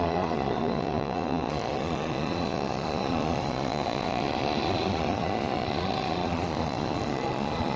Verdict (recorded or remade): remade